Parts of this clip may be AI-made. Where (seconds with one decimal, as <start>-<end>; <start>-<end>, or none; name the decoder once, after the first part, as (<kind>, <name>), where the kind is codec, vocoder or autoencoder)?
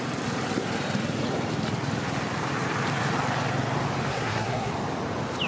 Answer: 4.1-4.7 (codec, SNAC)